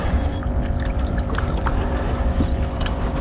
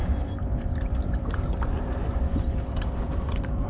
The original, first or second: first